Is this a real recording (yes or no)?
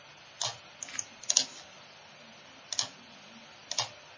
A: yes